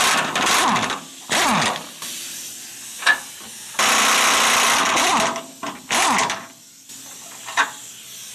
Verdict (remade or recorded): recorded